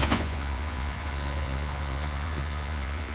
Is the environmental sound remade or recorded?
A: remade